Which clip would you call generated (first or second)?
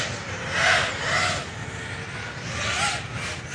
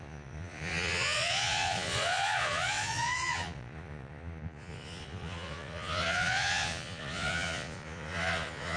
second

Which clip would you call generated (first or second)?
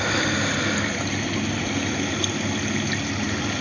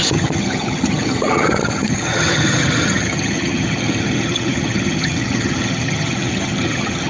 second